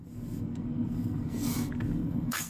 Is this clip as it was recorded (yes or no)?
no